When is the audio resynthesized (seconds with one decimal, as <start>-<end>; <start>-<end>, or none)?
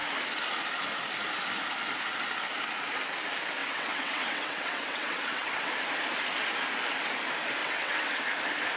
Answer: 3.6-5.7; 7.6-8.2